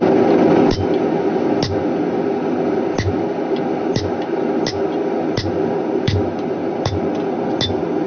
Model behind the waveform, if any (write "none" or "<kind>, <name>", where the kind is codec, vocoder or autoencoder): none